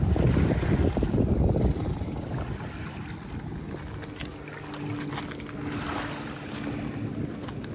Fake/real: real